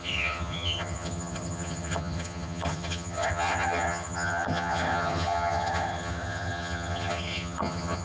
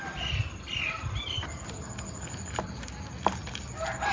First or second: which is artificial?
first